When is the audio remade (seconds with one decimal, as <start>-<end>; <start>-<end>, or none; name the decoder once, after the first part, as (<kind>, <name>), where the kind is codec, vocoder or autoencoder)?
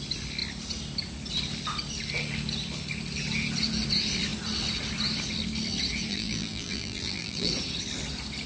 6.1-7.5 (vocoder, BigVGAN v2)